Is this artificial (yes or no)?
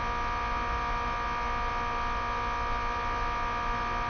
no